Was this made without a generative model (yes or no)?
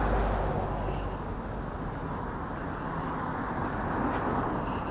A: yes